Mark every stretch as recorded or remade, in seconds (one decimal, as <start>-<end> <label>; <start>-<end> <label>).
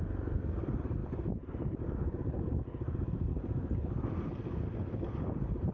0.0-5.7 recorded